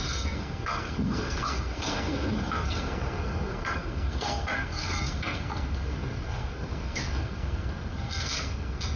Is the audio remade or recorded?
remade